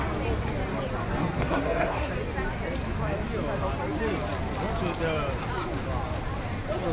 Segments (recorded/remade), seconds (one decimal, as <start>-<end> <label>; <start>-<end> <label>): 0.0-1.3 recorded; 1.3-2.1 remade; 2.1-6.9 recorded